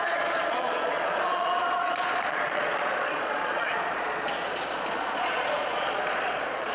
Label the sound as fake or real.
fake